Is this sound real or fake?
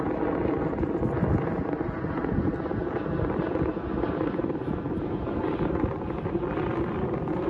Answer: real